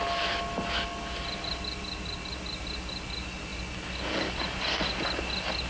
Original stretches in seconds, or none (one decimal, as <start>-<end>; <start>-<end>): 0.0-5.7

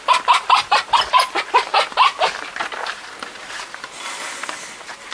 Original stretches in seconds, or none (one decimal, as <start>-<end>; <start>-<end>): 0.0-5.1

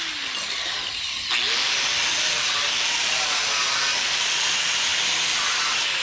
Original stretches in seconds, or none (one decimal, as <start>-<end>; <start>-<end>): 0.0-6.0

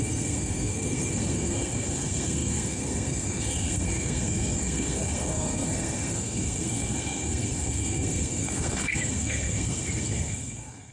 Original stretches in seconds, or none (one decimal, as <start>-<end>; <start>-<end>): none